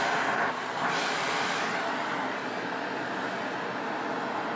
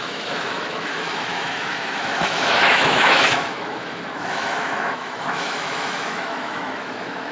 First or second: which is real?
first